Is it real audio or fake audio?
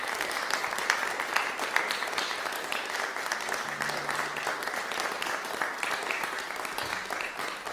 real